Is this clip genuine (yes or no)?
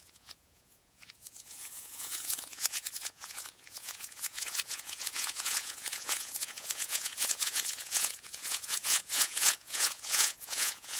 no